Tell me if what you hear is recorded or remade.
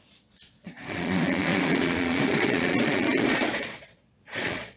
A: remade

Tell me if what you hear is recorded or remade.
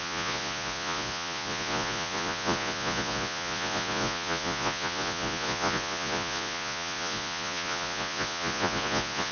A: remade